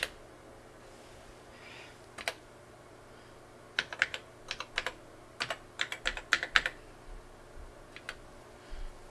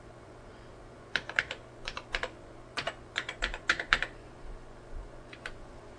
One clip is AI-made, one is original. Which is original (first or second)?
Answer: first